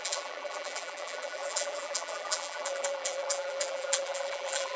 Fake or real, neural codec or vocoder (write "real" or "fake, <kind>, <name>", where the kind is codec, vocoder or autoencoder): fake, vocoder, BigVGAN v2